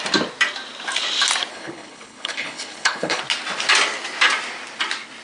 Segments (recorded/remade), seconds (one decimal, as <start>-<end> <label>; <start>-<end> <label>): 0.0-1.5 recorded; 1.5-3.2 remade; 3.2-5.2 recorded